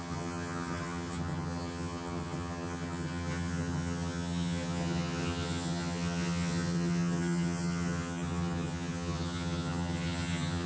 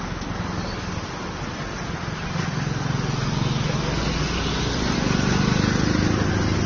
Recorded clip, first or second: second